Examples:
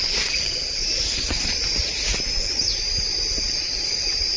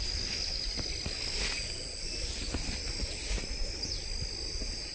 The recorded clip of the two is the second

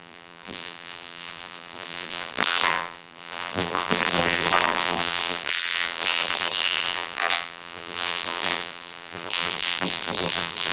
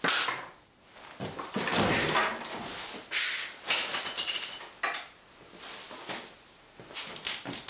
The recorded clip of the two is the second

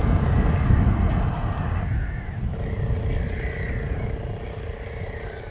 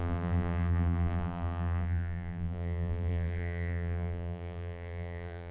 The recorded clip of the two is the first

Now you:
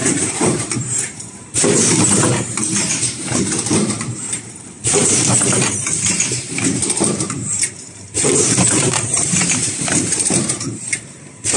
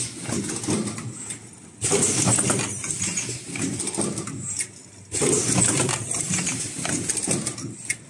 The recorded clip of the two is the second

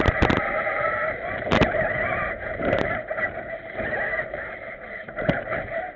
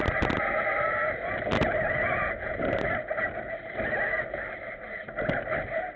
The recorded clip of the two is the second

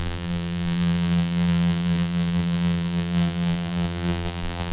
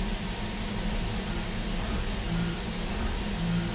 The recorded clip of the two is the second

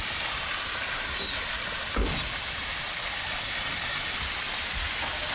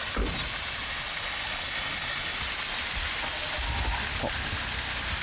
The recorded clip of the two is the second